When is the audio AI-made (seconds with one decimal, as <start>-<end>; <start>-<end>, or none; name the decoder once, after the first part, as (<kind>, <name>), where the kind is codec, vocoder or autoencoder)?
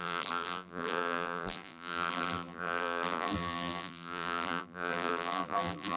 0.0-6.0 (vocoder, BigVGAN v2)